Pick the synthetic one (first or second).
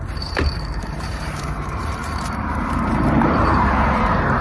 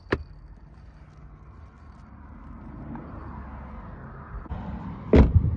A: first